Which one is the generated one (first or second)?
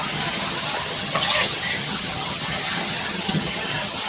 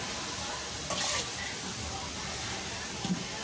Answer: first